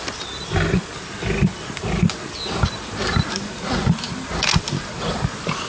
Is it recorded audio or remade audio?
recorded